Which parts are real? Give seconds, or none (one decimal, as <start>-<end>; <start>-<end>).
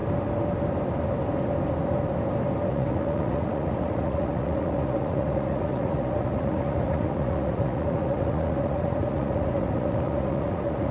0.0-2.7